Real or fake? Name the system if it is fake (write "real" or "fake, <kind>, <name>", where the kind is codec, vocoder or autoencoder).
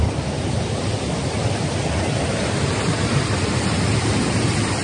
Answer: real